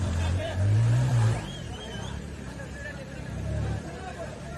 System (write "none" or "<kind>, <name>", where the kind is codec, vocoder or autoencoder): vocoder, BigVGAN v2